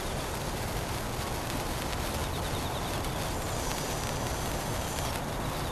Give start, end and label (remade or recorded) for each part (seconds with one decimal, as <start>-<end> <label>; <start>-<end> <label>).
0.0-5.7 recorded